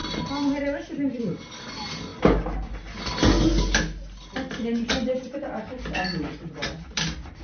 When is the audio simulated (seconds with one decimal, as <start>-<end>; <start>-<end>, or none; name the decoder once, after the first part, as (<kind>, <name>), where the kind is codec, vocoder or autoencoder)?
none